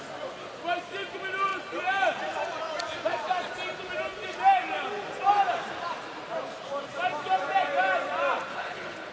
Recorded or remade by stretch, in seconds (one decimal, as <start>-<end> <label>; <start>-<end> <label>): 0.0-8.5 recorded; 8.5-9.1 remade